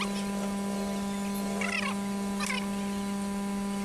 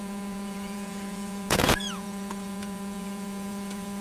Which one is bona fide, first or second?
first